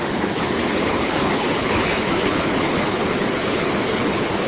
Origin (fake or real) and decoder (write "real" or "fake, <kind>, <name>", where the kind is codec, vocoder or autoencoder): fake, codec, HILCodec